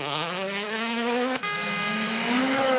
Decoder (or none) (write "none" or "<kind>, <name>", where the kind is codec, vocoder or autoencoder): autoencoder, DAC-VAE